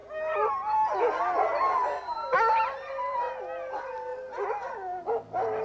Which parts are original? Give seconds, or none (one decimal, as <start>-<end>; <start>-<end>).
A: 3.4-4.1; 4.7-5.6